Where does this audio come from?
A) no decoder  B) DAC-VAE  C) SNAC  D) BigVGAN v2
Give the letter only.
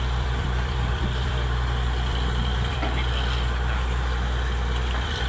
D